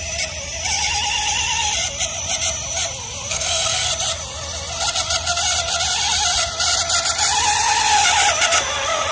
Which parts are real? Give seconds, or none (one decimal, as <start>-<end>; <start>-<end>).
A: 0.0-3.3; 3.9-9.1